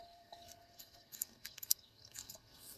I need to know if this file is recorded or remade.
remade